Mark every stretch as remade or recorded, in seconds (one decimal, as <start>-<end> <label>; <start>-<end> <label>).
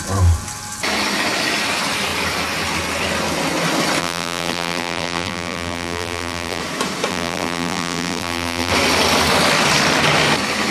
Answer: 0.0-4.0 recorded; 4.0-6.6 remade; 6.6-7.1 recorded; 7.1-8.7 remade; 8.7-10.7 recorded